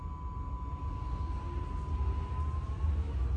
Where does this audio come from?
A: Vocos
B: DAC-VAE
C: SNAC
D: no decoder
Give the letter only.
D